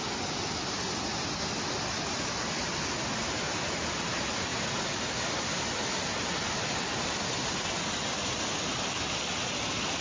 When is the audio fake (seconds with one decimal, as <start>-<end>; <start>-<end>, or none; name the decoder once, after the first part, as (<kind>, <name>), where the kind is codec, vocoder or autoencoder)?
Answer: none